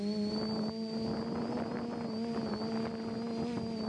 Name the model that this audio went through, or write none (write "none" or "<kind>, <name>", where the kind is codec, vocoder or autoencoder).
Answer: none